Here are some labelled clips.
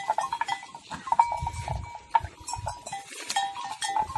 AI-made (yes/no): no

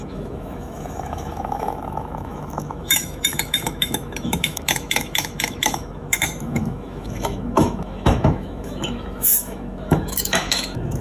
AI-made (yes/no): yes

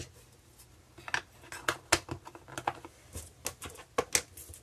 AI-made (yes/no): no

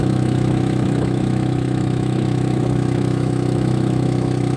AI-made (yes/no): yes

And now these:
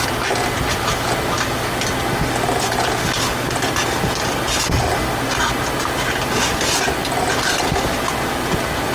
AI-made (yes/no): no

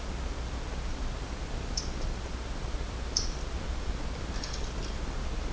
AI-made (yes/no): no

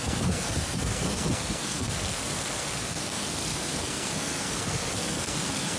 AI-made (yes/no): yes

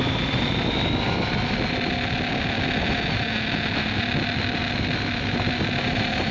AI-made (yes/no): no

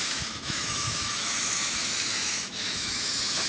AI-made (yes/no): yes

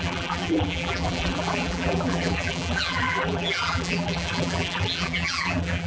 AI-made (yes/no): yes